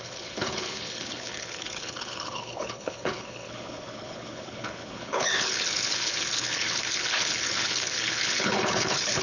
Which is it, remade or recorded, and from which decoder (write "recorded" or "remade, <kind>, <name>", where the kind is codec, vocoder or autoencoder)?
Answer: remade, codec, HILCodec